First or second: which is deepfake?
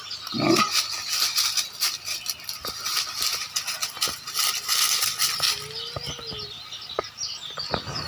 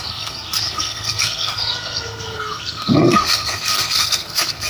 second